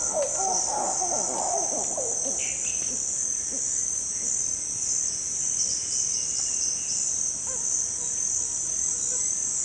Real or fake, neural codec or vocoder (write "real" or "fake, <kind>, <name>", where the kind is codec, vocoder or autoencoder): real